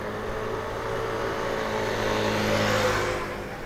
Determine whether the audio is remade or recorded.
recorded